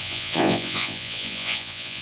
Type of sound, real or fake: fake